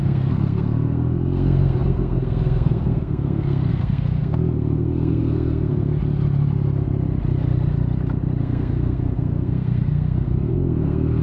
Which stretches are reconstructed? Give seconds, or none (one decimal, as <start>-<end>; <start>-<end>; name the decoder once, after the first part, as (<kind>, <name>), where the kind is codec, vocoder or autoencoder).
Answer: 0.0-5.9 (codec, SNAC); 8.4-11.2

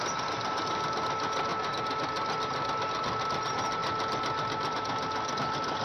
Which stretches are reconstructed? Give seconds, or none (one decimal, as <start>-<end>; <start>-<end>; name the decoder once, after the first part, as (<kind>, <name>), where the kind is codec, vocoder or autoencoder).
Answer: none

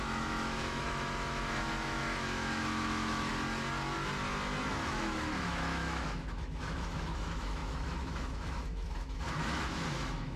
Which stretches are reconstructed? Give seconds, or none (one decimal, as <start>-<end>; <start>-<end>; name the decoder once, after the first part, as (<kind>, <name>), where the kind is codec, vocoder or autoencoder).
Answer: 0.0-3.3 (autoencoder, DAC-VAE); 4.7-10.4